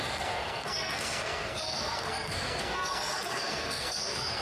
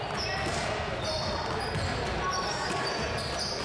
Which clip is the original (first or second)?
second